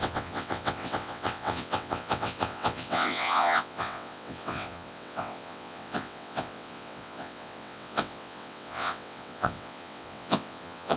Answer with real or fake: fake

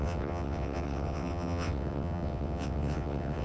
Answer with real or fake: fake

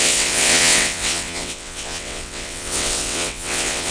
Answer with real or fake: fake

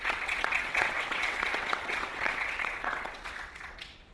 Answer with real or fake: fake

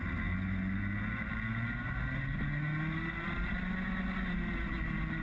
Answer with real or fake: real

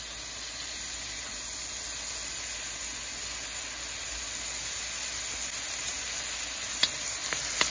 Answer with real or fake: real